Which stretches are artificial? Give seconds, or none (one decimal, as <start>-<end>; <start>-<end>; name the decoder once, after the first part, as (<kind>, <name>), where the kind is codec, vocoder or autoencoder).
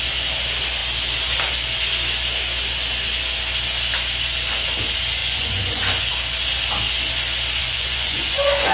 5.2-6.1 (vocoder, Vocos); 7.6-8.7